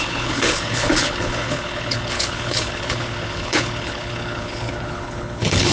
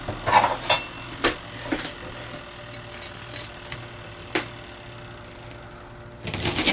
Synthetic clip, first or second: first